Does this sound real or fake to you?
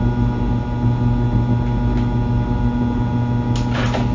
real